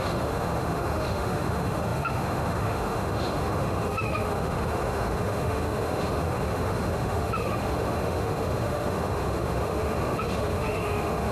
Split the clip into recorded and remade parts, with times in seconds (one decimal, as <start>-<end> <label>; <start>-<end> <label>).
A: 0.0-11.3 remade